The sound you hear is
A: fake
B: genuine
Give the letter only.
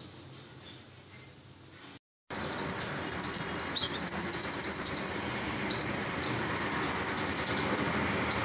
B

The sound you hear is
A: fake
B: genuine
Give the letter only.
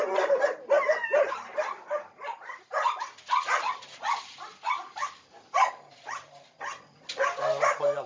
B